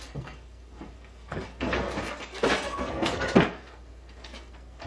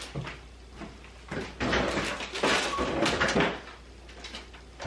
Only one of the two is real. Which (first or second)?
second